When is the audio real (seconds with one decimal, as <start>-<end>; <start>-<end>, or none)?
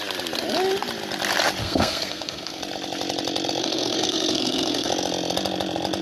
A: 0.0-1.6; 2.6-3.6; 4.9-6.0